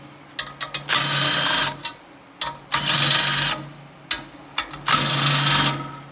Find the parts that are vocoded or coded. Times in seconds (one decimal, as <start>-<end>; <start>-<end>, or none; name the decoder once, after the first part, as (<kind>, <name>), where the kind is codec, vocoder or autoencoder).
none